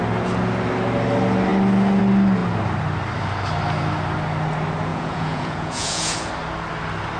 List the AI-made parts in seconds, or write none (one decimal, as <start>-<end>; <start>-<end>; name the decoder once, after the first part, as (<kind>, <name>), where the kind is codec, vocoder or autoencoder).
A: 4.9-6.3 (vocoder, Vocos)